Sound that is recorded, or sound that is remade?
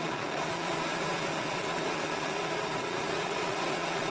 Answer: remade